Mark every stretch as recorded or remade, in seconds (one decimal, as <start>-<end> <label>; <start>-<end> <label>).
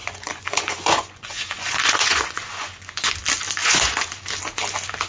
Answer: 0.0-3.1 remade; 3.1-3.6 recorded; 3.6-4.1 remade; 4.1-5.1 recorded